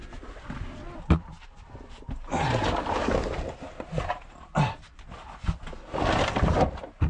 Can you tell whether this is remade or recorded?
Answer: recorded